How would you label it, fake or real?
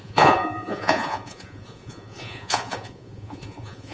fake